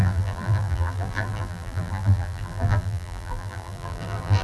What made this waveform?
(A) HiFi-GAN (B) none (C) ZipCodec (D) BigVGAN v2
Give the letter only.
D